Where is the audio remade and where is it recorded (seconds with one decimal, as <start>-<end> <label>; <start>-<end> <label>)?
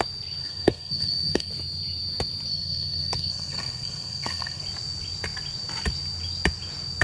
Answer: 0.0-0.4 recorded; 0.4-1.5 remade; 1.5-2.5 recorded; 2.5-4.6 remade; 4.6-7.0 recorded